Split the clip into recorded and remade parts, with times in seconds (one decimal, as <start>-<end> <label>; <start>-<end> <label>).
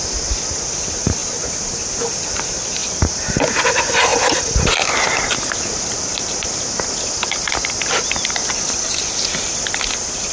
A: 0.0-10.3 recorded